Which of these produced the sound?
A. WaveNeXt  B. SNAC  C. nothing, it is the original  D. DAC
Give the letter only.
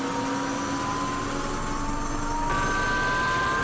C